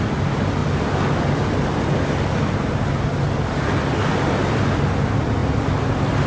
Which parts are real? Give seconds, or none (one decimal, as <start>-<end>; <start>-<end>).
0.0-6.3